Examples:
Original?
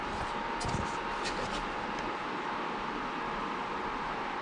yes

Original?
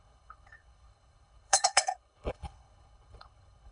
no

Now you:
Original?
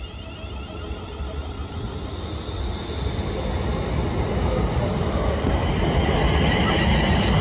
yes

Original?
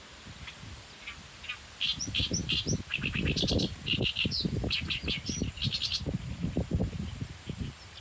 yes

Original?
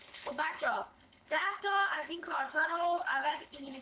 no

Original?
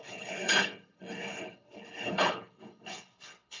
no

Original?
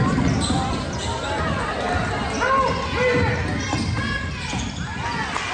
yes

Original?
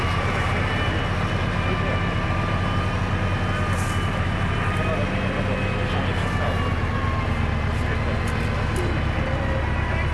yes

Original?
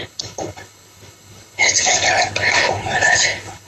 no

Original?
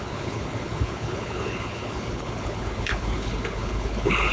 no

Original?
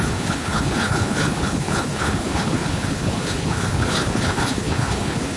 no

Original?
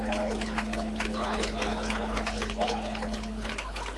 no